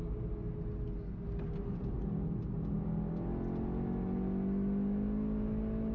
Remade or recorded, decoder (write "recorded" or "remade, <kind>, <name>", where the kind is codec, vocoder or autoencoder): recorded